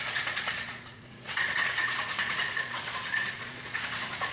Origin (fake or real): fake